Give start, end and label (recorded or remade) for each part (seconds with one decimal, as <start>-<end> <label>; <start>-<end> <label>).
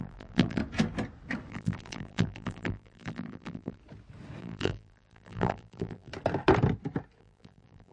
0.0-0.6 remade; 0.6-1.5 recorded; 1.5-3.8 remade; 3.8-4.4 recorded; 4.4-6.1 remade; 6.1-7.2 recorded; 7.2-7.9 remade